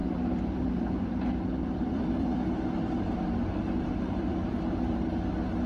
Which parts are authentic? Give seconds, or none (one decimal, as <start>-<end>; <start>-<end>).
0.8-1.6; 4.9-5.7